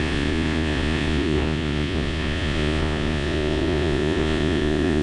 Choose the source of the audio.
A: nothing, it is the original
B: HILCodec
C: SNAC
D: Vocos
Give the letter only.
D